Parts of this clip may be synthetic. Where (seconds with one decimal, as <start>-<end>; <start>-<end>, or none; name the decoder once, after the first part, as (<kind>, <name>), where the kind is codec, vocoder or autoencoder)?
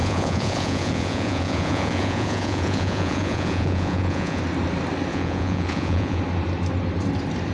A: 0.0-4.4 (vocoder, Vocos); 5.1-6.2